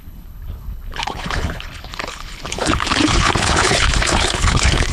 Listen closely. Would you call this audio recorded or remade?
remade